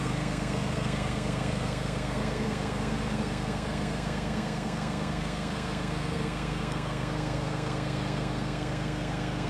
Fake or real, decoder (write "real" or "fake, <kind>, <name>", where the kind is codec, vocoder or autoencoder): fake, codec, SNAC